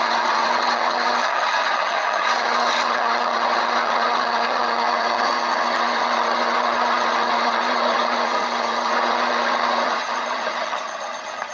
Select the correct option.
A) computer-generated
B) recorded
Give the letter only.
A